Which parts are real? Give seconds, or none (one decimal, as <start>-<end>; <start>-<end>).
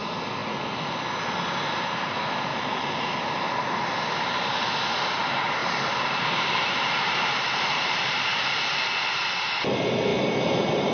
0.0-2.5; 3.2-5.6; 9.2-10.1